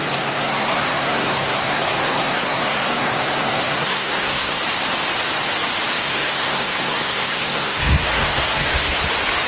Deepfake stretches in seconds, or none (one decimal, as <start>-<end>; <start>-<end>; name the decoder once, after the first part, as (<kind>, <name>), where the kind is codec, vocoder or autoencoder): 0.0-4.6 (codec, SNAC); 6.0-9.0